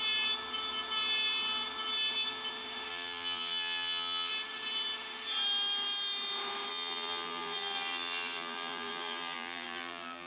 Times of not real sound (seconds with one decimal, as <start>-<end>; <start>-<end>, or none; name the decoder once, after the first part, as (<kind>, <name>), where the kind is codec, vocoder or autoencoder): 2.9-4.3 (vocoder, BigVGAN v2); 6.7-10.3